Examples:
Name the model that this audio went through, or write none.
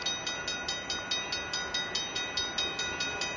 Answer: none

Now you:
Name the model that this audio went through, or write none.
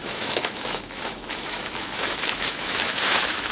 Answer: autoencoder, DAC-VAE